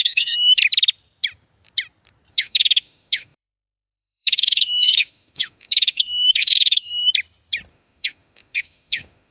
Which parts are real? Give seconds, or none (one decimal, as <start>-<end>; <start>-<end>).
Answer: 0.6-2.3; 7.0-7.7